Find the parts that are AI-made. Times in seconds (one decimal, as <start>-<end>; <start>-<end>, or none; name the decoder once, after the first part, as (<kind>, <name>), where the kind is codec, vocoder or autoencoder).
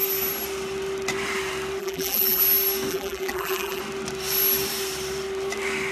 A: 1.8-2.4 (vocoder, BigVGAN v2); 2.9-3.8